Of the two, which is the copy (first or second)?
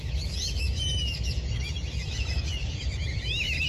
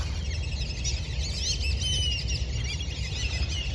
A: first